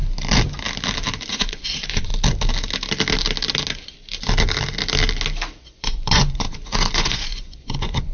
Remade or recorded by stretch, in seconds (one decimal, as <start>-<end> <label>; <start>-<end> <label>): 0.0-1.3 recorded; 1.3-2.1 remade; 2.1-5.6 recorded; 5.6-8.1 remade